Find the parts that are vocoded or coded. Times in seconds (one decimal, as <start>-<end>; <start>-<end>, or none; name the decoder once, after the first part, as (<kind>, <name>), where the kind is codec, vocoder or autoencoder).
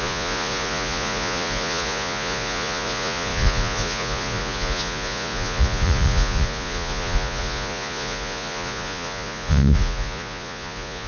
0.0-11.1 (vocoder, Vocos)